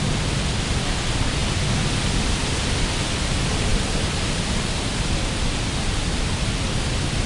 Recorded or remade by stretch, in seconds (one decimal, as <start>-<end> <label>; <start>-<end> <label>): 0.0-7.3 recorded